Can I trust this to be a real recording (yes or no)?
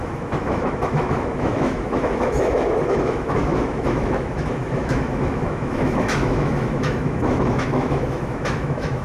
no